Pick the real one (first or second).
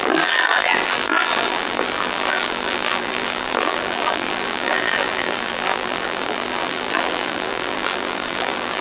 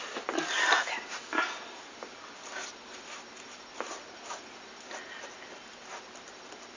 second